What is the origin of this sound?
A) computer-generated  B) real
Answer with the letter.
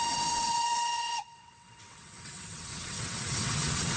A